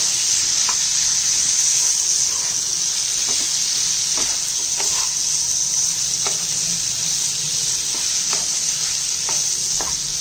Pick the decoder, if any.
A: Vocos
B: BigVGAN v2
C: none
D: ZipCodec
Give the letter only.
C